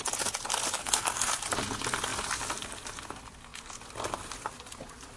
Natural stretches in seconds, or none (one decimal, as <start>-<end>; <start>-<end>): 0.0-0.8; 1.3-5.2

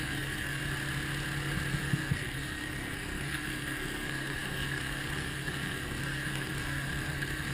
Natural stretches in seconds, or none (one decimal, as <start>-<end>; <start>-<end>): 0.6-1.7